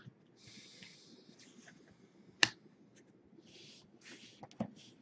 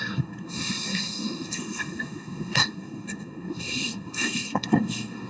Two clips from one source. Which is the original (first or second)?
first